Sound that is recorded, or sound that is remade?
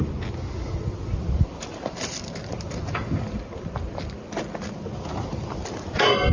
recorded